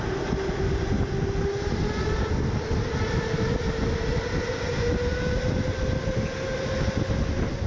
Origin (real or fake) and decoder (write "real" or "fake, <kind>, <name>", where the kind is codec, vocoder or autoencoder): real